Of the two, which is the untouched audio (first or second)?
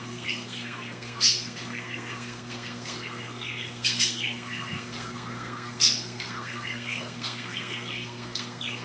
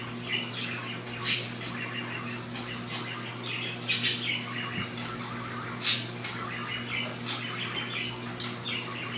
second